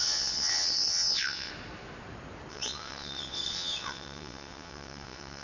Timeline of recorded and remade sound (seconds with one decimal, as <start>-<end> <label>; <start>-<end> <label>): 0.0-1.5 remade; 1.5-2.5 recorded; 2.5-5.4 remade